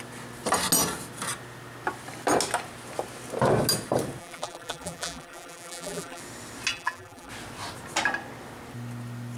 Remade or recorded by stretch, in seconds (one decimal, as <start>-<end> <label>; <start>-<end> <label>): 0.0-4.2 recorded; 4.2-6.2 remade; 6.2-6.7 recorded; 6.7-7.3 remade; 7.3-9.4 recorded